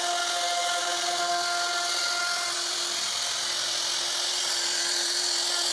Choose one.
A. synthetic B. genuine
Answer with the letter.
B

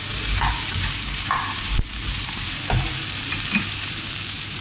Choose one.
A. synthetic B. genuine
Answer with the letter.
A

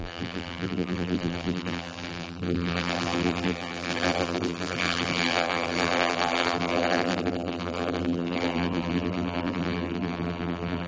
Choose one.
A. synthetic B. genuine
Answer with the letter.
A